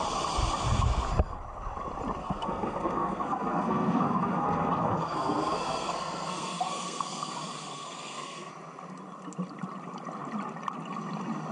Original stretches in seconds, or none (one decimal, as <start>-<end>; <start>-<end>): 0.0-2.2; 7.3-7.7; 8.5-11.5